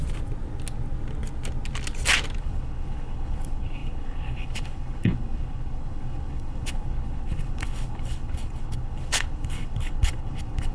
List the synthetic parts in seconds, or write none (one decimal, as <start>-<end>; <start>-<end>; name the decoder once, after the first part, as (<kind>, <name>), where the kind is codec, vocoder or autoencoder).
2.4-10.7 (codec, HILCodec)